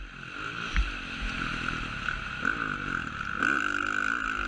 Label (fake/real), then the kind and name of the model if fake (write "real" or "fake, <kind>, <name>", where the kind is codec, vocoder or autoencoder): real